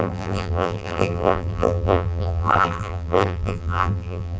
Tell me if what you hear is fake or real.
fake